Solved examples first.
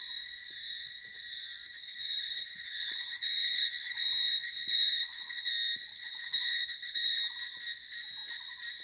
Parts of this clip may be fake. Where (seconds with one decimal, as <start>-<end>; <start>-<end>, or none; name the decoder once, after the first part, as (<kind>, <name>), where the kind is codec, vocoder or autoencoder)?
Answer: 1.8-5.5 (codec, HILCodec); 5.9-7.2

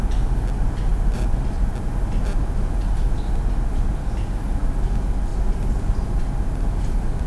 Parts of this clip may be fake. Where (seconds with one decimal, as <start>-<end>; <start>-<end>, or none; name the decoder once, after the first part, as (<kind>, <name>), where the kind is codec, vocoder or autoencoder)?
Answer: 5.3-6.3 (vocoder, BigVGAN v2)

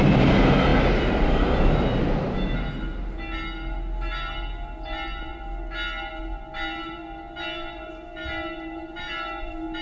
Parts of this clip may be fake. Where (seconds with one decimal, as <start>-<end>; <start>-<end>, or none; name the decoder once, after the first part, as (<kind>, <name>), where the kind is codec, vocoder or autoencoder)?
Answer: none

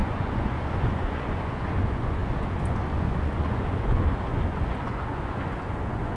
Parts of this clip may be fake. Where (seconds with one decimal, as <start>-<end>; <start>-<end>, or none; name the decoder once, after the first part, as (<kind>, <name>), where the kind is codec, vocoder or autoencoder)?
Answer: 0.0-6.2 (vocoder, Vocos)

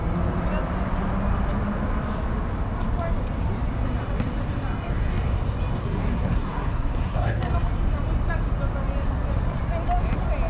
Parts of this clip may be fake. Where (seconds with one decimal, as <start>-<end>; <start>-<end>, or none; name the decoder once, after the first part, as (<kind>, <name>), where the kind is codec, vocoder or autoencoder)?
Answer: 5.8-7.4 (codec, SNAC)